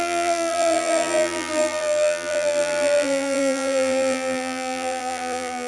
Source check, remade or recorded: remade